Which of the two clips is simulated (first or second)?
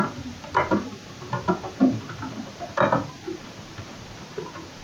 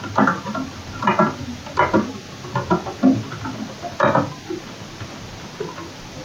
first